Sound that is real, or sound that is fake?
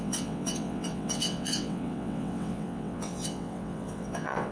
fake